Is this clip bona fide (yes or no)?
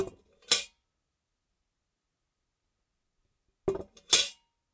yes